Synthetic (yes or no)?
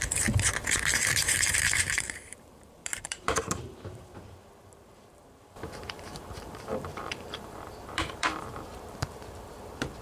yes